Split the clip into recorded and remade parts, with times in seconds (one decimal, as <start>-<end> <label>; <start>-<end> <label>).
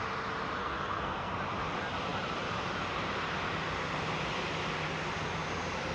0.0-0.6 recorded; 0.6-1.3 remade; 1.3-5.9 recorded